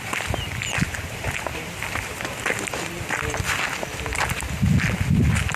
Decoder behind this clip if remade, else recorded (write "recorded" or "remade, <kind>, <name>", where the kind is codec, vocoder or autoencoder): recorded